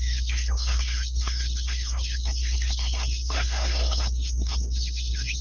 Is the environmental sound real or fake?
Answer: fake